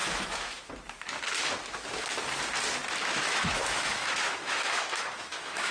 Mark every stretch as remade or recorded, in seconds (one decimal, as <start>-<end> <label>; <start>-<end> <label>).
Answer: 0.0-0.7 remade; 0.7-3.0 recorded; 3.0-5.7 remade